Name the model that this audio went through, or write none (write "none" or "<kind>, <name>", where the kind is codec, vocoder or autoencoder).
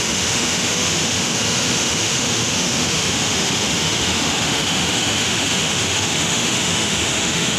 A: autoencoder, DAC-VAE